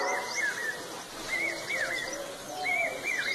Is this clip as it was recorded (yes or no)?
yes